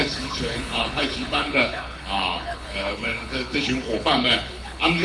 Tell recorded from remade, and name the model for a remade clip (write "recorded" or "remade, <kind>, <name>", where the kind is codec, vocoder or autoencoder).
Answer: remade, codec, HILCodec